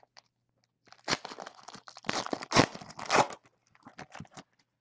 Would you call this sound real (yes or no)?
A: yes